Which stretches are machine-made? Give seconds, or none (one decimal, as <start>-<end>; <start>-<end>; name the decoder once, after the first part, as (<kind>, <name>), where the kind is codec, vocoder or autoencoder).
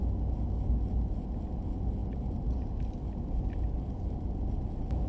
none